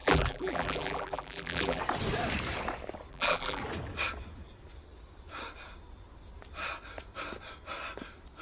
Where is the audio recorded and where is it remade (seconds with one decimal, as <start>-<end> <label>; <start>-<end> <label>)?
0.0-1.8 remade; 1.8-3.1 recorded; 3.1-3.6 remade; 3.6-8.4 recorded